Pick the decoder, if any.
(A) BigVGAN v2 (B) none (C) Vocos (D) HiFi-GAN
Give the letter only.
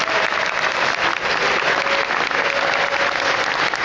B